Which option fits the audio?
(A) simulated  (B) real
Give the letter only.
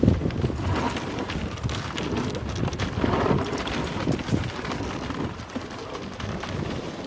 B